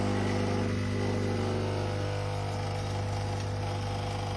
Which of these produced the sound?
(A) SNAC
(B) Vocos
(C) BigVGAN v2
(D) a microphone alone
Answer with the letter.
D